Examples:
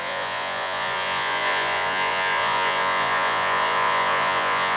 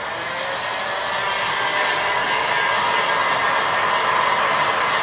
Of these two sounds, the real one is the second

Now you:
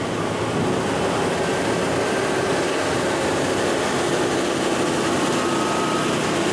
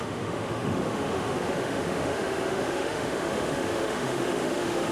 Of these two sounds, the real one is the first